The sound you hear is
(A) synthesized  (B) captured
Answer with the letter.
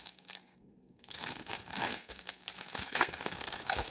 A